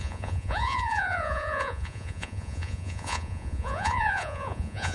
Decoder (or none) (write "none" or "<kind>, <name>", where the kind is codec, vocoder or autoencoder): vocoder, Vocos